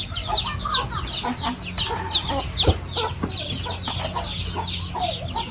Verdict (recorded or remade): recorded